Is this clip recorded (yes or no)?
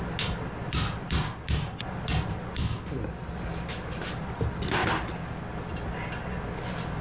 yes